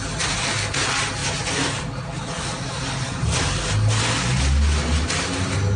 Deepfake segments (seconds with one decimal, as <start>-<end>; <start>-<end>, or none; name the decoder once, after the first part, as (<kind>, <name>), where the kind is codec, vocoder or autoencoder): none